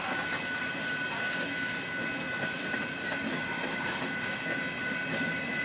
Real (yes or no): yes